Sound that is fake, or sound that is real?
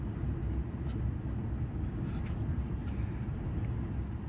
real